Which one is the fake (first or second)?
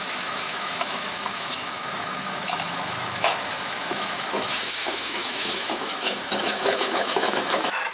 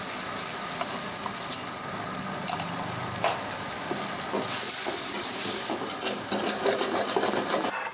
first